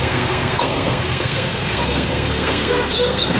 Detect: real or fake fake